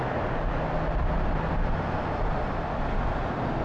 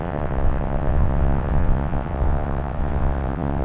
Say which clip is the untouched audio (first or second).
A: first